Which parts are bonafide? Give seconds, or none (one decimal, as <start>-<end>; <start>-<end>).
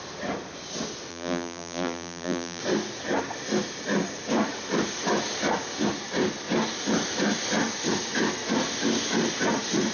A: 0.0-1.1; 2.6-9.9